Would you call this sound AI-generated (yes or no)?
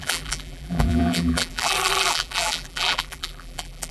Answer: yes